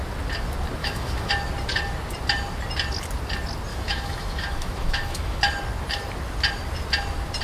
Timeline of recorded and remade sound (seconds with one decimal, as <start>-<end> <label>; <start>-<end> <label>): 0.0-0.8 recorded; 0.8-1.3 remade; 1.3-3.7 recorded; 3.7-5.4 remade; 5.4-7.4 recorded